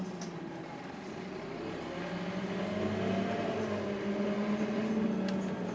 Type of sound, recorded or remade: recorded